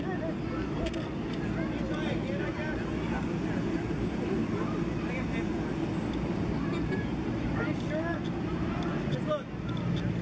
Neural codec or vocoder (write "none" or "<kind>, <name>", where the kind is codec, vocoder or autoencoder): none